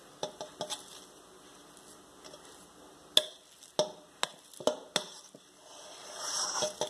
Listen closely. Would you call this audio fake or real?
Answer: real